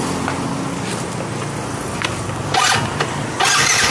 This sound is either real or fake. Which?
real